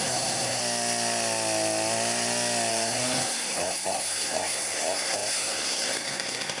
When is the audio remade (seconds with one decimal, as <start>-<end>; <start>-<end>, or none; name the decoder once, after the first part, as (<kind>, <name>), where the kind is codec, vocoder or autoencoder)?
0.0-0.6 (codec, SNAC); 2.7-6.6